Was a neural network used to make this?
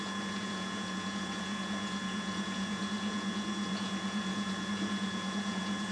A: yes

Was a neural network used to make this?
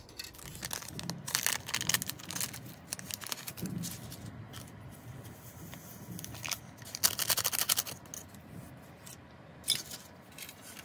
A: no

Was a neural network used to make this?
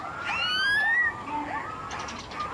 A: no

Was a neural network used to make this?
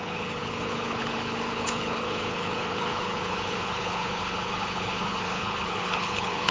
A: yes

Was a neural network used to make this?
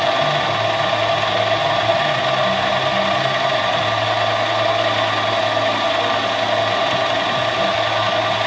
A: no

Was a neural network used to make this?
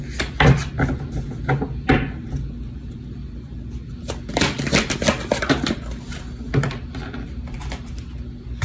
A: no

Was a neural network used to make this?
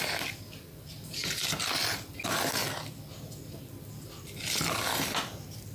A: no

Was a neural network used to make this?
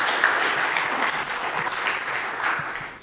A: no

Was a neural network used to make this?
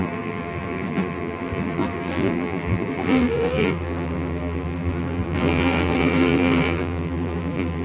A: yes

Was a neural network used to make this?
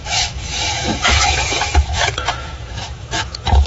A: yes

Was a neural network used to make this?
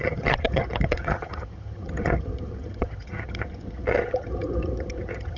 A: yes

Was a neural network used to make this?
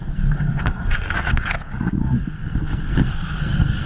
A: yes